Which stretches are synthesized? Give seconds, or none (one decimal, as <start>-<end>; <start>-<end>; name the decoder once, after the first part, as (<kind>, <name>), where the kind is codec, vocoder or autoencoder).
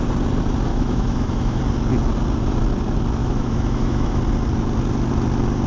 0.7-1.6 (autoencoder, DAC-VAE); 3.2-4.2